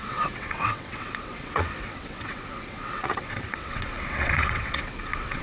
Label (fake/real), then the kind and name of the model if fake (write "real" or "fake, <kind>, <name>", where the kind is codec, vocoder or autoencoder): fake, vocoder, WaveNeXt